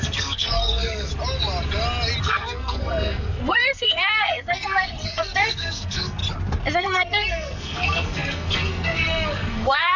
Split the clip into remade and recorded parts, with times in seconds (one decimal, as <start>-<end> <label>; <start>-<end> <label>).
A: 0.0-1.1 remade; 1.1-2.2 recorded; 2.2-6.2 remade; 6.2-6.8 recorded; 6.8-10.0 remade